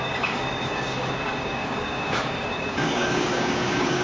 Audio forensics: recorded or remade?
remade